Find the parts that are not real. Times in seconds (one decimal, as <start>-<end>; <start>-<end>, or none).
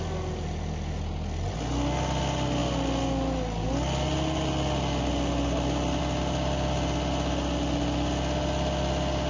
none